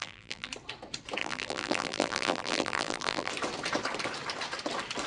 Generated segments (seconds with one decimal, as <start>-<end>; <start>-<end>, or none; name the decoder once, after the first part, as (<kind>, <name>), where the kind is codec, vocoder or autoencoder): 0.0-0.5 (vocoder, BigVGAN v2); 1.2-3.3